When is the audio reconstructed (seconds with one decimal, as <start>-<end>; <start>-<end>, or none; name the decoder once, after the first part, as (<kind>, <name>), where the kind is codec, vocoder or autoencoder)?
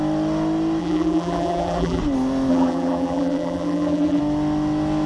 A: 0.8-2.0 (vocoder, BigVGAN v2); 2.5-4.2